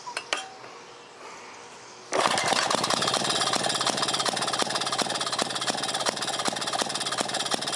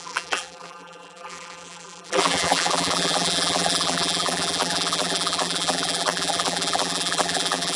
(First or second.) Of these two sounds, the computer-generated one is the second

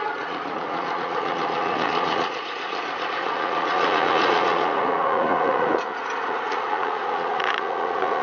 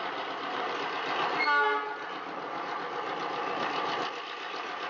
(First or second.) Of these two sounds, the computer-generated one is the first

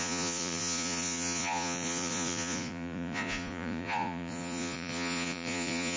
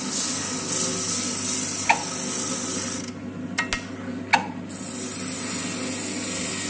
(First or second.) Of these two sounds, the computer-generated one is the first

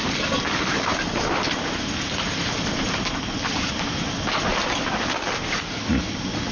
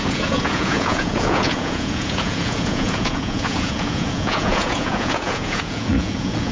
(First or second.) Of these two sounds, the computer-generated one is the second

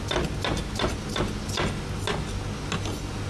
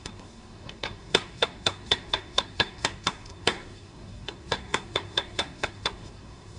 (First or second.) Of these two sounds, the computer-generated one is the second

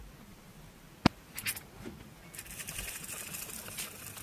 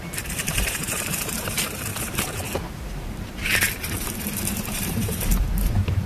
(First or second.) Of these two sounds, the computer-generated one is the second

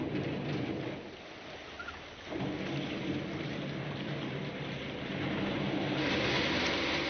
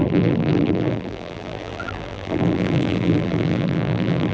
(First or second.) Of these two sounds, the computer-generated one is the second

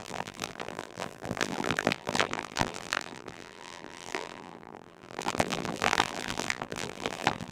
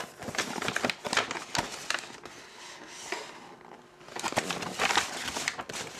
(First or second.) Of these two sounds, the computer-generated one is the first